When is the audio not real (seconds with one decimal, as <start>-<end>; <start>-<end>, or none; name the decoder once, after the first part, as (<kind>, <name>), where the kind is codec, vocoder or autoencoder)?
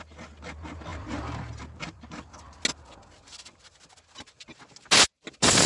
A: 0.9-2.5 (vocoder, BigVGAN v2)